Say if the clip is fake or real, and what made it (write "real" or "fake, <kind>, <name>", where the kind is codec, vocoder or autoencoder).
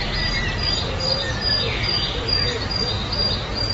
real